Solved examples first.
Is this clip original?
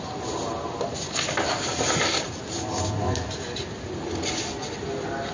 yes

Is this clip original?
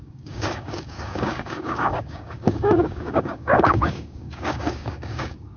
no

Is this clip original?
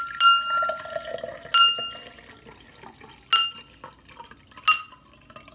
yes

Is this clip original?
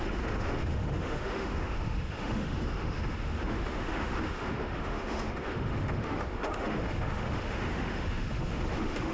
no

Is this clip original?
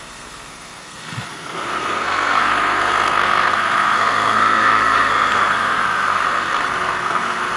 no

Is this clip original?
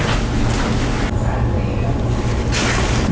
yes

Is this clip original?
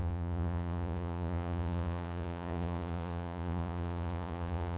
no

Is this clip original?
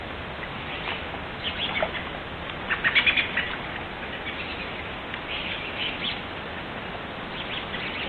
yes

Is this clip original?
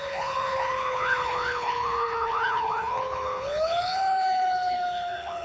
no